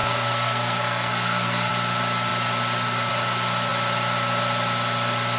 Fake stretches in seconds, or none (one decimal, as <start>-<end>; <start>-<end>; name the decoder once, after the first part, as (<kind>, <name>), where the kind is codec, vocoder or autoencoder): 0.0-1.7 (codec, SNAC)